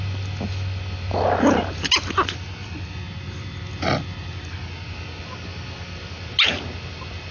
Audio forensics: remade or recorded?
recorded